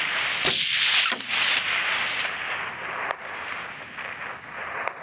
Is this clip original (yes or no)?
yes